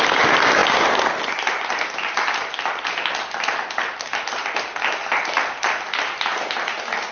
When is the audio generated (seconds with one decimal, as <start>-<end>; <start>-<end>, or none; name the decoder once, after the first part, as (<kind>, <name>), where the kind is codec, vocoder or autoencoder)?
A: none